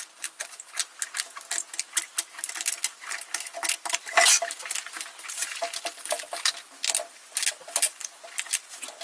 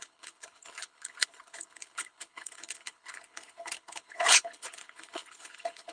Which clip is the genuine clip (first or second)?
first